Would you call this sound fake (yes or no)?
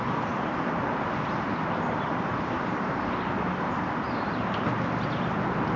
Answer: no